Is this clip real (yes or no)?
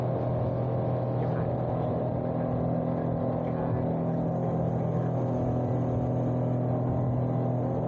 yes